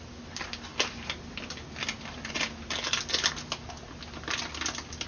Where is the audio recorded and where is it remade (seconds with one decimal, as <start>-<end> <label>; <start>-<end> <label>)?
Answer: 0.0-5.1 recorded